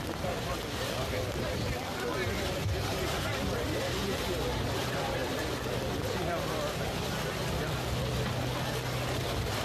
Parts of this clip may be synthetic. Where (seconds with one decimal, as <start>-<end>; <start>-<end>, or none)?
none